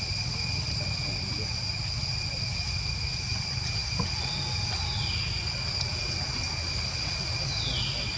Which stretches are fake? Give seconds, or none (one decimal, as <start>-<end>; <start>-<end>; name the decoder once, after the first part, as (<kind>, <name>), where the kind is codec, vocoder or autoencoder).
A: none